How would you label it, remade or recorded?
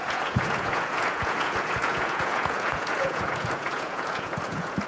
remade